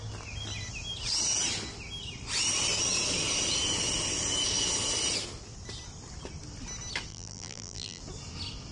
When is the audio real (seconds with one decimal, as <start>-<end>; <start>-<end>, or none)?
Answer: 0.0-7.1; 8.0-8.7